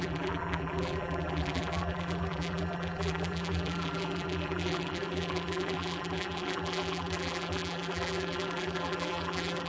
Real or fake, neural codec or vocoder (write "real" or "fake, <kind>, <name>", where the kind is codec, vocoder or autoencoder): fake, vocoder, BigVGAN v2